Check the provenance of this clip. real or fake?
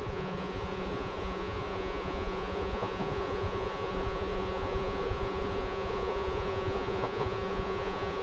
fake